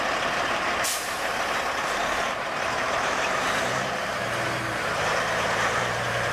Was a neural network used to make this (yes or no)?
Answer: yes